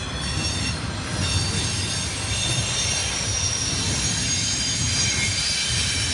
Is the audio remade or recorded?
recorded